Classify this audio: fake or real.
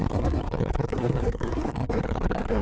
fake